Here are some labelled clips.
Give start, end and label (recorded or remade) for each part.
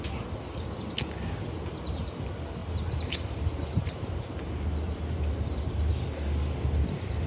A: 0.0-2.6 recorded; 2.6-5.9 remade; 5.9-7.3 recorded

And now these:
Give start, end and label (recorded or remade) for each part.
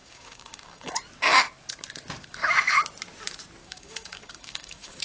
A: 0.0-0.9 remade; 0.9-3.6 recorded; 3.6-5.0 remade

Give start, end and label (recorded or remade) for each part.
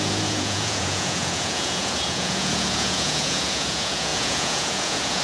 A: 0.0-5.2 remade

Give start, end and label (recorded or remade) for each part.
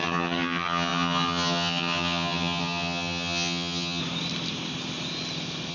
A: 0.0-4.0 remade; 4.0-5.7 recorded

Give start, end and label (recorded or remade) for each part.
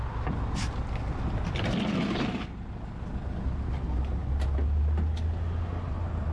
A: 0.0-6.3 recorded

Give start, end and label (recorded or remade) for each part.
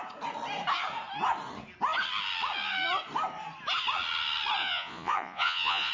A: 0.0-4.6 recorded; 4.6-5.9 remade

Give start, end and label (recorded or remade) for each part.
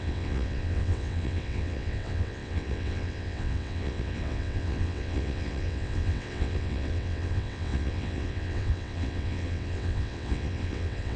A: 0.0-11.2 remade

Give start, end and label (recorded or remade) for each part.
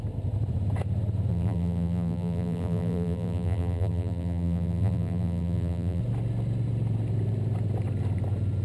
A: 0.0-1.3 recorded; 1.3-6.0 remade; 6.0-8.6 recorded